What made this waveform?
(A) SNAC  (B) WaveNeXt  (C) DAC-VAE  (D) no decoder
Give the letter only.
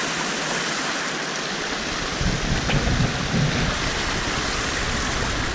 D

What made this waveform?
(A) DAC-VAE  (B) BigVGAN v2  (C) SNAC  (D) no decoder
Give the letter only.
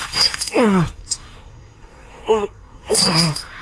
C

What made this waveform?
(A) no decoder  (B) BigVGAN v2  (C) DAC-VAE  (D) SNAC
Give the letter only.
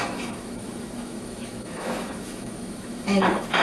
C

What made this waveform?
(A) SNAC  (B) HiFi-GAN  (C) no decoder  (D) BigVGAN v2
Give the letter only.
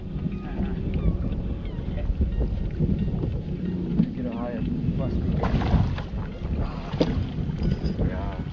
C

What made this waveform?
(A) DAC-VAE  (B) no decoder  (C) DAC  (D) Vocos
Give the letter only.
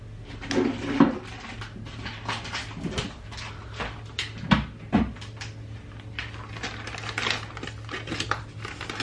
B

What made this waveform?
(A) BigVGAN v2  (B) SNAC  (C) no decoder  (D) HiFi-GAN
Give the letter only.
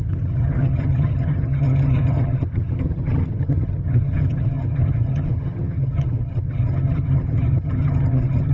D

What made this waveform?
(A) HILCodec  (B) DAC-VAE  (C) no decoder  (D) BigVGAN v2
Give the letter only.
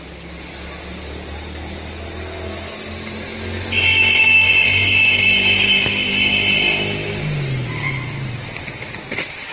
C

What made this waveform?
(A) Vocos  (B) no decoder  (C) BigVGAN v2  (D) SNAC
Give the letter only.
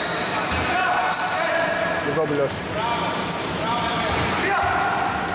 B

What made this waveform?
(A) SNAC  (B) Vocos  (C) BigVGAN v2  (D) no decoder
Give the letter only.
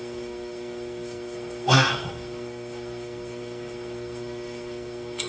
A